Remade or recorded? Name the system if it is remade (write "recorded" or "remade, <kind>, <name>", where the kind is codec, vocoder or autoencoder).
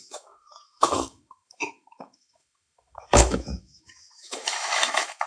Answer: remade, autoencoder, DAC-VAE